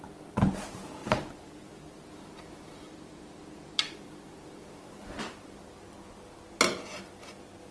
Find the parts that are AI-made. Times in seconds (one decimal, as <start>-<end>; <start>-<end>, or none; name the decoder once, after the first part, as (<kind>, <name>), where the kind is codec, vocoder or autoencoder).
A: 1.0-5.6 (vocoder, BigVGAN v2)